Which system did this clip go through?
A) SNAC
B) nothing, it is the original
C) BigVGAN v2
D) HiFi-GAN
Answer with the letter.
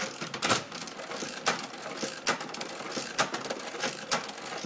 B